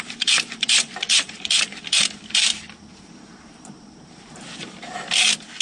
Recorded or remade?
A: remade